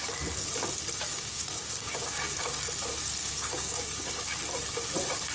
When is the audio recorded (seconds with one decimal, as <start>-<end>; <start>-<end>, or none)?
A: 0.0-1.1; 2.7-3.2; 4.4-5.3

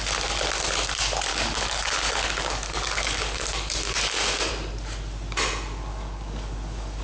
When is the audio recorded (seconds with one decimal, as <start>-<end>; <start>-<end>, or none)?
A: 0.0-1.3; 4.5-5.9

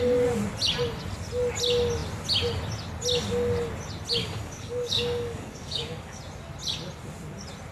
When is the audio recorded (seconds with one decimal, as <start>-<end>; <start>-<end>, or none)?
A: 0.0-4.2; 6.2-7.7

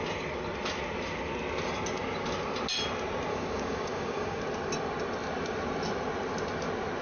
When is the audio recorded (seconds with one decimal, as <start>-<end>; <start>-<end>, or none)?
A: 0.0-3.3; 4.4-7.0

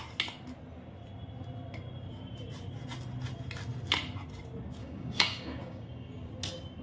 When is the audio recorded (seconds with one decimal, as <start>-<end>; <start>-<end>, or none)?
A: 0.0-4.8; 6.3-6.8

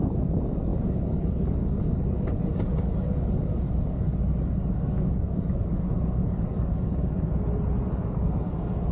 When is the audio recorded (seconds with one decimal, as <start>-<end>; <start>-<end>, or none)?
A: 7.3-7.9

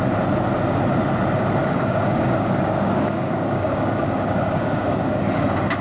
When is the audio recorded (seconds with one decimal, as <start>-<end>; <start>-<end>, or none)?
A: 0.0-1.6; 5.1-5.8

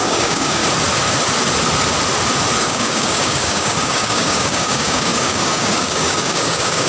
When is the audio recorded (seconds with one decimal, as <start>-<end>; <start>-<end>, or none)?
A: 0.6-2.6